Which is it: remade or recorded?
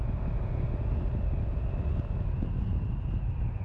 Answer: recorded